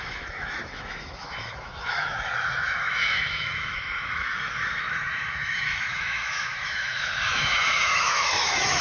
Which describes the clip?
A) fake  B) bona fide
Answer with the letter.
A